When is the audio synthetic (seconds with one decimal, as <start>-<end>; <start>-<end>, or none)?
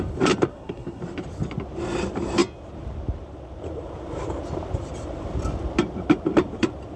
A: 0.5-1.0